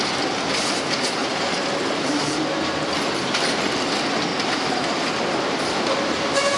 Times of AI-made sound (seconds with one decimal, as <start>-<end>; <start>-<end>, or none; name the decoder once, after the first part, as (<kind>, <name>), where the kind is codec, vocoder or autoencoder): 1.2-2.2 (vocoder, BigVGAN v2); 4.3-5.2